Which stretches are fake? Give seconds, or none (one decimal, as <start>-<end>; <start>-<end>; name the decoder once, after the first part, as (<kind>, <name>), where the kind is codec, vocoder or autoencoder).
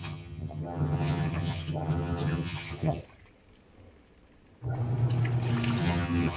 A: 0.0-3.0 (vocoder, HiFi-GAN); 5.8-6.4